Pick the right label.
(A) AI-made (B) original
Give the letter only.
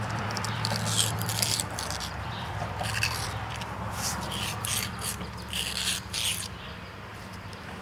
A